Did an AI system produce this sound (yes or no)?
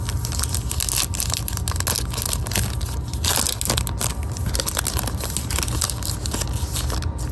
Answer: no